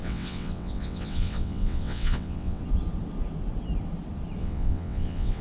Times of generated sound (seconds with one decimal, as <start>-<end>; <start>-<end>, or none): 0.0-2.6; 4.4-5.4